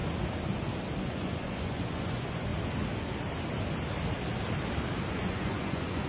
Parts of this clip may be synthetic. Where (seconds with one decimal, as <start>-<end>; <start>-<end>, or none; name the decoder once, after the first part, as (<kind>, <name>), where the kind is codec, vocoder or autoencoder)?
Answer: 1.0-2.5 (vocoder, Vocos); 5.1-6.1